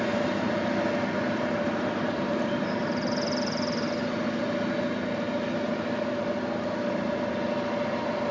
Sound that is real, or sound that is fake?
real